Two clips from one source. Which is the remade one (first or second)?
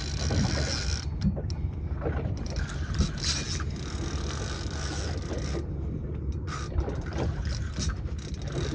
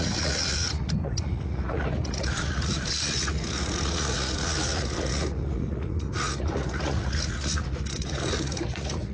second